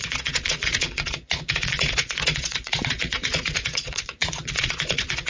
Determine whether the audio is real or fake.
fake